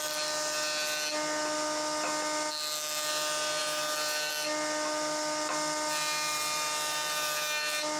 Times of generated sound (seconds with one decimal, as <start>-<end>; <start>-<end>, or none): none